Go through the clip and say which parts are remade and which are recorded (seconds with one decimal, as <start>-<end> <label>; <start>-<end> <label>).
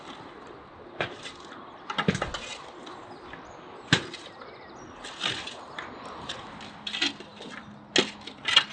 0.0-8.7 recorded